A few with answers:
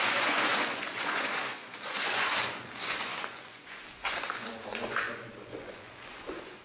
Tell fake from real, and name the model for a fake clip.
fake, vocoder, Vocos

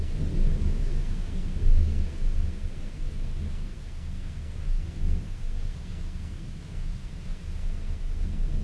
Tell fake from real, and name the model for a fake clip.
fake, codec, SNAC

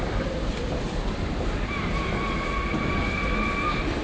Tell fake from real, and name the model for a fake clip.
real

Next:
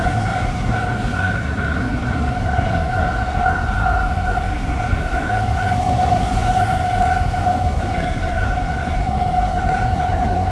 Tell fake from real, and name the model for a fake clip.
fake, codec, SNAC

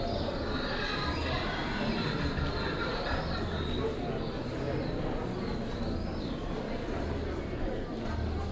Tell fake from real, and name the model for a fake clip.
real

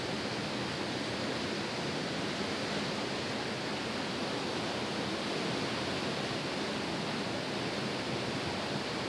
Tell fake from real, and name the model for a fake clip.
real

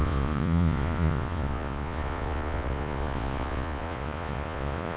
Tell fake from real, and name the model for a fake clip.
fake, vocoder, Vocos